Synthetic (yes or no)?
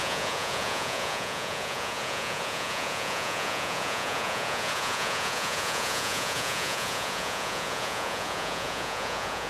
yes